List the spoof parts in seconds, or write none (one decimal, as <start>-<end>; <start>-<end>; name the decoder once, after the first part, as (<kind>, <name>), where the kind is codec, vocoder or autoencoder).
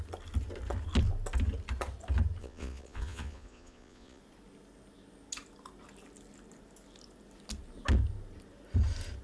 2.4-4.2 (vocoder, Vocos)